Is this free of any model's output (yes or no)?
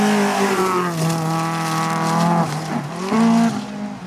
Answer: yes